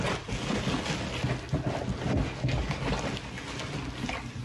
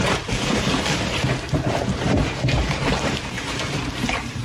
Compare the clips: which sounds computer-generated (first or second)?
second